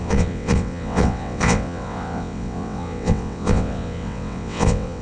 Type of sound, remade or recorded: remade